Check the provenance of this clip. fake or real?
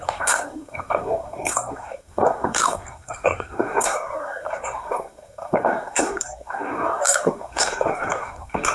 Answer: fake